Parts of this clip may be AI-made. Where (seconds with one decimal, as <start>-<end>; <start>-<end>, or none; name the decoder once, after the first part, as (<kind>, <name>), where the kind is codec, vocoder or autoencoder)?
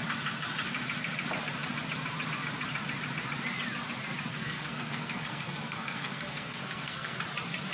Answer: 4.3-7.2 (codec, SNAC)